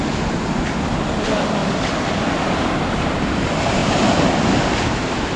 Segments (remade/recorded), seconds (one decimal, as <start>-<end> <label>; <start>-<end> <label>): 0.0-1.6 recorded; 1.6-2.5 remade; 2.5-5.4 recorded